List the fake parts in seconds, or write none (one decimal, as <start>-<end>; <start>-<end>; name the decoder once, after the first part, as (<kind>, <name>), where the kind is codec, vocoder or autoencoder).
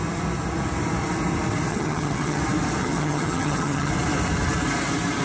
1.7-2.4 (vocoder, HiFi-GAN); 2.8-3.9